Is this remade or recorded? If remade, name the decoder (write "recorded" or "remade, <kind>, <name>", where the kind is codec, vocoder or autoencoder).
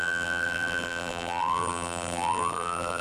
remade, vocoder, BigVGAN v2